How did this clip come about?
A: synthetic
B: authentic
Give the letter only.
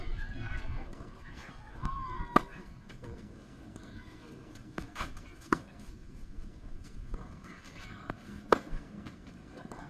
A